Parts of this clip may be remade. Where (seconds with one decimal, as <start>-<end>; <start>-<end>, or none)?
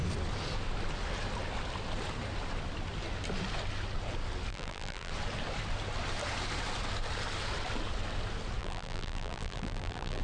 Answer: 4.5-5.1; 8.6-10.2